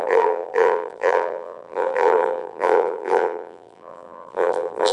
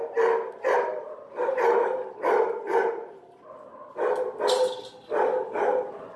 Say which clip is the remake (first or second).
first